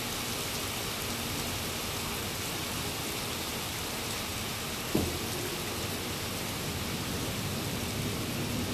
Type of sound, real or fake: real